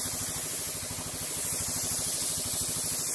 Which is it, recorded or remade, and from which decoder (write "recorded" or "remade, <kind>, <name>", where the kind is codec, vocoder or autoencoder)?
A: recorded